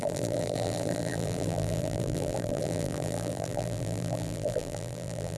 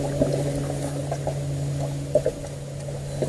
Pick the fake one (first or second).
first